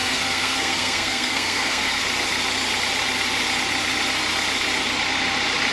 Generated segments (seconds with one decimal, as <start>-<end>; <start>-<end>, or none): 0.0-2.0